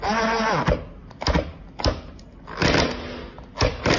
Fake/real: real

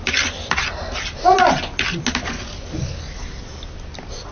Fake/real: real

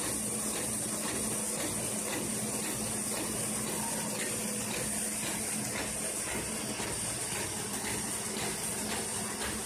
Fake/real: real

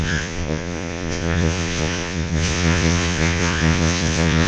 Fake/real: fake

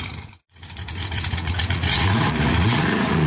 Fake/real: fake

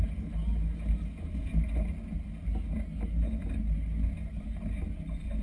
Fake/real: real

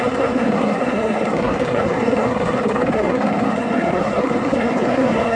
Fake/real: fake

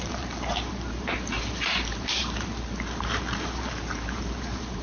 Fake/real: fake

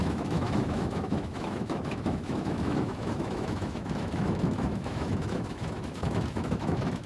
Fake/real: fake